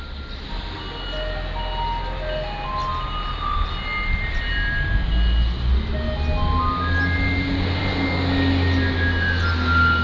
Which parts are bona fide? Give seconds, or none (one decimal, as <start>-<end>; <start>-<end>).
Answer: 0.0-10.0